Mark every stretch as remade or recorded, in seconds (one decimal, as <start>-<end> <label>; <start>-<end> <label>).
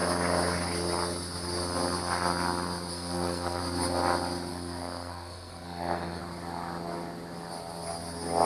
0.0-2.9 recorded; 2.9-3.6 remade; 3.6-4.5 recorded; 4.5-6.2 remade; 6.2-8.5 recorded